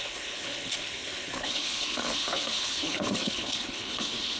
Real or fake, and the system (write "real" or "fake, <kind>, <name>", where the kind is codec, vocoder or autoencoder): fake, codec, HILCodec